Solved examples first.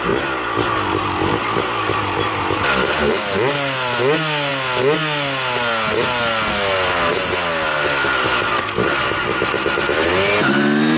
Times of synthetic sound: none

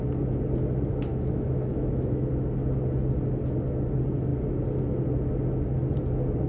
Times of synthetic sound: 1.1-2.3 (autoencoder, DAC-VAE)

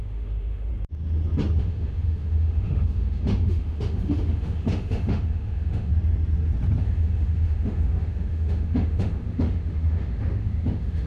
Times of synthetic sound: 0.0-0.7 (autoencoder, DAC-VAE); 1.6-5.9; 6.8-11.1

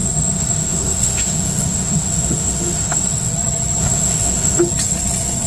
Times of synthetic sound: 0.0-3.3 (autoencoder, DAC-VAE); 3.8-4.6

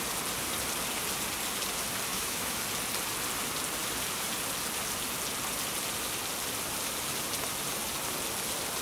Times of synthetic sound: 2.1-2.6 (autoencoder, DAC-VAE)

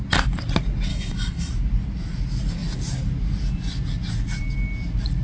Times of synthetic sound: 0.9-1.5 (autoencoder, DAC-VAE)